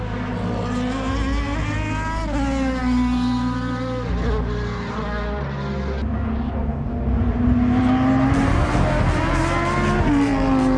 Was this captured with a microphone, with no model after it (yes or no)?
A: yes